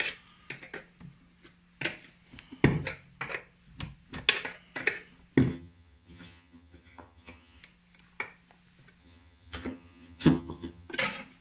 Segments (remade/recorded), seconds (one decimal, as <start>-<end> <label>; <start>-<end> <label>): 0.0-5.5 recorded; 5.5-7.6 remade; 7.6-9.0 recorded; 9.0-10.9 remade; 10.9-11.4 recorded